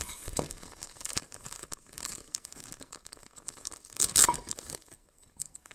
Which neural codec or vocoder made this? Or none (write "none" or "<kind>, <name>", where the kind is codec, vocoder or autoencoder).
codec, SNAC